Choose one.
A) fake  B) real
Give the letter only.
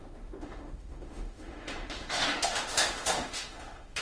A